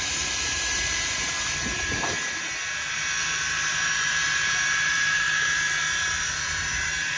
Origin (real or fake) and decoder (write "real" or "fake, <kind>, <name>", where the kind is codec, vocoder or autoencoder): fake, vocoder, BigVGAN v2